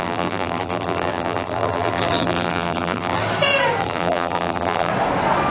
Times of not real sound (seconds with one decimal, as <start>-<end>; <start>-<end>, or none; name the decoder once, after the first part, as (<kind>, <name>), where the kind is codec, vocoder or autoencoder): 0.0-3.2 (vocoder, BigVGAN v2); 3.8-4.9